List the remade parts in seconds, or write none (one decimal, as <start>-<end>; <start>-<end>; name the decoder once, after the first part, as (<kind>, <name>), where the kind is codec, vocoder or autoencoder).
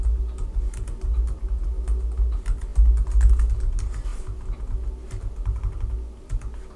none